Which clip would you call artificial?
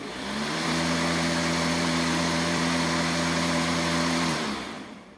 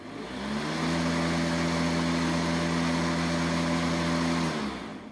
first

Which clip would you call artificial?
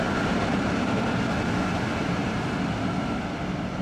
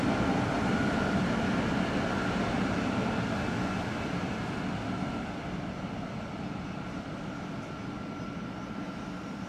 first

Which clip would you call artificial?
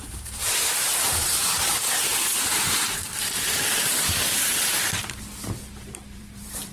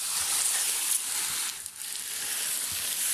first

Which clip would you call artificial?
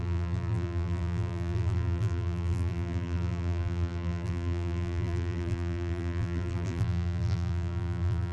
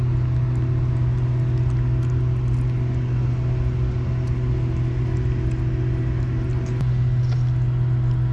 first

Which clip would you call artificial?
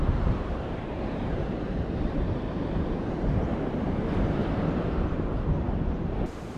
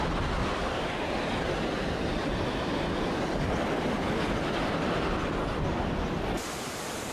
first